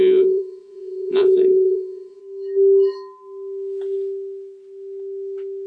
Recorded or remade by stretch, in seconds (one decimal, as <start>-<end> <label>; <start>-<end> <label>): 0.0-2.2 remade; 2.2-5.7 recorded